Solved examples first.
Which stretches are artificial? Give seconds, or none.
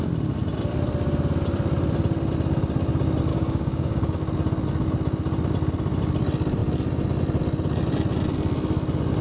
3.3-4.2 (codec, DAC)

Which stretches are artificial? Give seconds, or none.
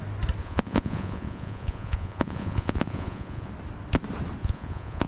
0.4-3.5 (vocoder, Vocos); 4.4-5.1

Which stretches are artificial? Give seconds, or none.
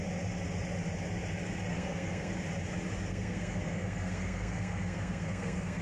1.7-2.3 (codec, SNAC); 3.1-5.8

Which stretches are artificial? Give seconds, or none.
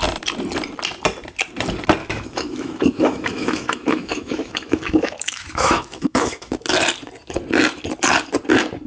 2.0-6.5 (autoencoder, DAC-VAE)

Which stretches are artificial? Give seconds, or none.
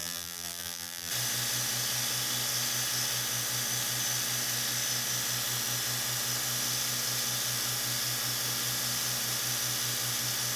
0.0-1.1 (vocoder, BigVGAN v2)